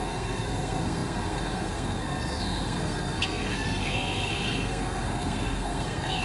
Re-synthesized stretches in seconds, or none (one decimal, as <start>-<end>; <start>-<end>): 0.0-6.2